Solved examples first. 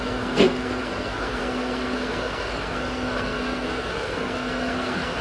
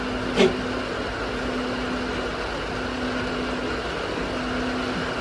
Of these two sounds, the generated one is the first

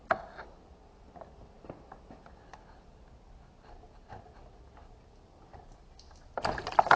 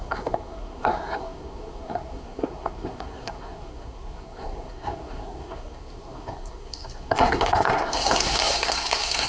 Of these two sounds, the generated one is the second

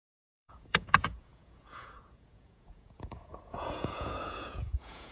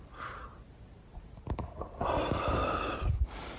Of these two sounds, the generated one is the first